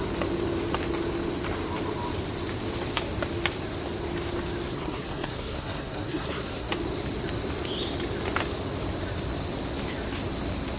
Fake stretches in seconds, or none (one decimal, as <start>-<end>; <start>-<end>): 4.7-6.7